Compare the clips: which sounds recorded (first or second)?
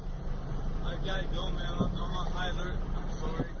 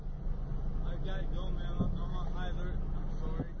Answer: second